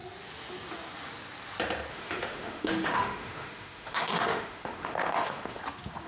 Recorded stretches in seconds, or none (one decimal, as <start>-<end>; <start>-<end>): 0.0-1.9; 5.6-6.1